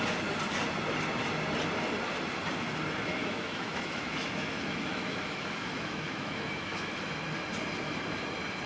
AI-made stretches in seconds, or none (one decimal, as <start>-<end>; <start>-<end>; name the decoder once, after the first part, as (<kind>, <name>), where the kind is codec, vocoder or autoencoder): 3.1-7.1 (autoencoder, DAC-VAE)